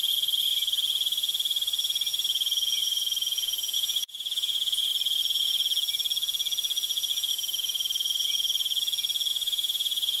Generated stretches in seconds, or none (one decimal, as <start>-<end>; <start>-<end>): 2.1-4.9; 9.3-10.2

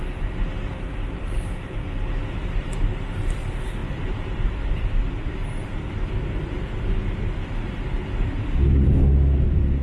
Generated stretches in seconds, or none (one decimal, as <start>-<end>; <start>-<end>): 3.8-9.0

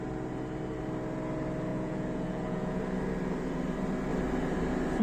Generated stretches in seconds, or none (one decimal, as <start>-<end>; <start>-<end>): 1.7-2.8

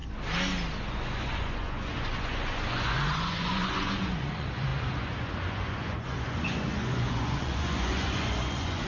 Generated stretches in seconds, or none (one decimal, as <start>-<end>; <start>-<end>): 0.9-8.9

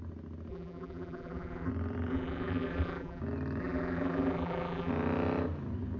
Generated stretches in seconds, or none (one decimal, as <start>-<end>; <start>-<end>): 0.5-1.7; 2.1-3.2; 3.6-4.9